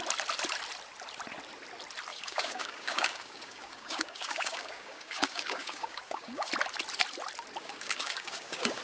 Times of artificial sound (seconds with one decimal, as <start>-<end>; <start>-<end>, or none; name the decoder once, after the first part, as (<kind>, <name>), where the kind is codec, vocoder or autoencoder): 2.1-6.5 (codec, DAC); 7.6-8.8